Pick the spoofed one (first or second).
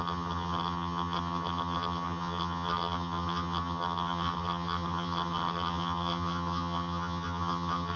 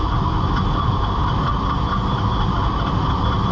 first